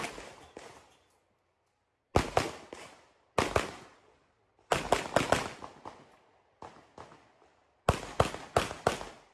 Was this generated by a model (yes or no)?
no